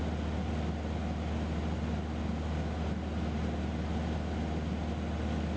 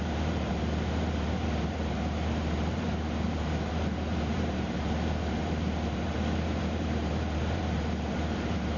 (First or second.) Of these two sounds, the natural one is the first